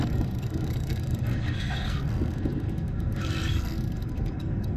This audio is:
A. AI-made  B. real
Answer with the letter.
A